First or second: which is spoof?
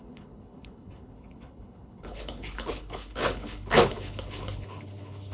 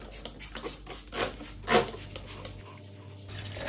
first